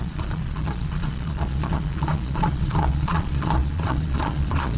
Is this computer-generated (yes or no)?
yes